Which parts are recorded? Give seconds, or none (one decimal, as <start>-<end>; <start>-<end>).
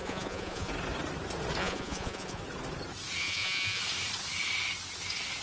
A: 0.7-1.6; 2.4-3.2; 3.8-5.4